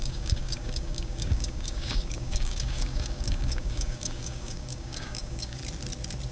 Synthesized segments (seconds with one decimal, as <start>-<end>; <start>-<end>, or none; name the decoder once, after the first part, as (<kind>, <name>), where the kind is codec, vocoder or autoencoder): 0.0-5.6 (codec, DAC)